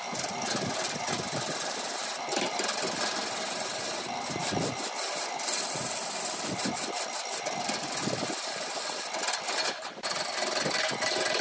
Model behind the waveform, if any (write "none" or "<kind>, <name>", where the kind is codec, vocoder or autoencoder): none